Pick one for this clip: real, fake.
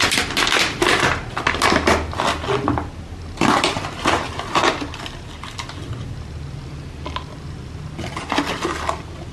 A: real